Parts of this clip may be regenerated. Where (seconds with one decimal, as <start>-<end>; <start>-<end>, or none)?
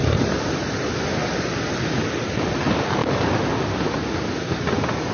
none